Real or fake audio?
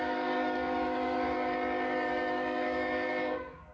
fake